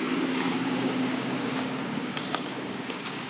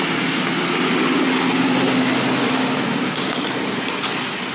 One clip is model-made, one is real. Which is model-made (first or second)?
first